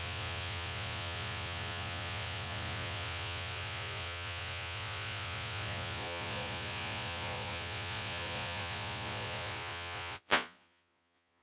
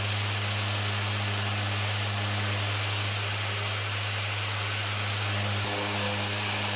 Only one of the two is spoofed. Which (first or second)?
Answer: first